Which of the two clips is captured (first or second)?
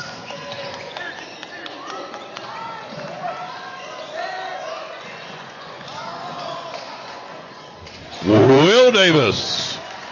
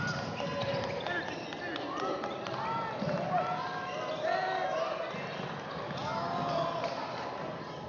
second